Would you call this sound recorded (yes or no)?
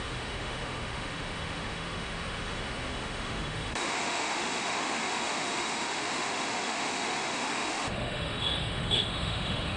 no